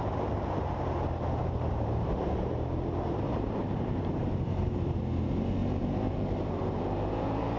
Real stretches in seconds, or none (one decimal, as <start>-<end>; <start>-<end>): 0.0-1.4; 5.0-5.6